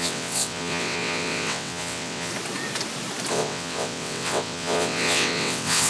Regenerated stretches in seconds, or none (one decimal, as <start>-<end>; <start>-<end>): 0.0-2.3; 3.3-5.9